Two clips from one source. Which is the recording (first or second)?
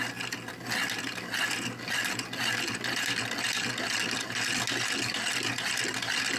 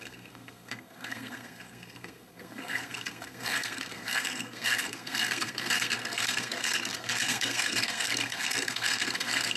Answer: first